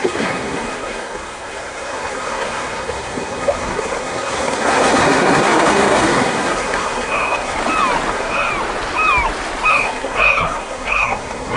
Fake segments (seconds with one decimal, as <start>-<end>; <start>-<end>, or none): 0.0-7.6; 8.1-8.5; 9.7-11.6